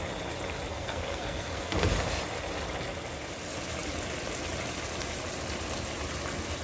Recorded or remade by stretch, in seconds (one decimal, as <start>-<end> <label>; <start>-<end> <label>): 0.0-0.7 recorded; 0.7-1.9 remade; 1.9-6.6 recorded